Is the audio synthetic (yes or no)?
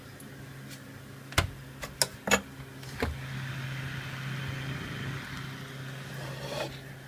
no